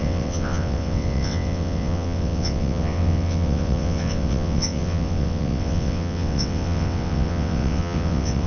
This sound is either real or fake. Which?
fake